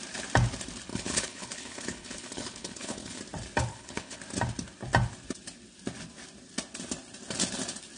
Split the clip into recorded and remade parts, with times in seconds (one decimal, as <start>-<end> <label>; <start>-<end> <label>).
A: 0.0-0.9 recorded; 0.9-3.2 remade; 3.2-3.7 recorded; 3.7-4.2 remade; 4.2-8.0 recorded